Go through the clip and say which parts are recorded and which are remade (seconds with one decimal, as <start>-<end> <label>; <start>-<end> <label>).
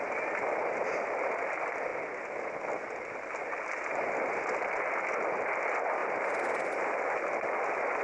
0.0-8.0 recorded